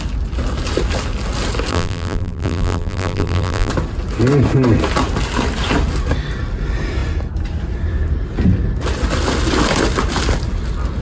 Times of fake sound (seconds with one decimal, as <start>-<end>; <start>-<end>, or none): 1.7-3.7